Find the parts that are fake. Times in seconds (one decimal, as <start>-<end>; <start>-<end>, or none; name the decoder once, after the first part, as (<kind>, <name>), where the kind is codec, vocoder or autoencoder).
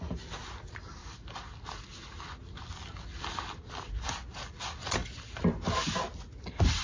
none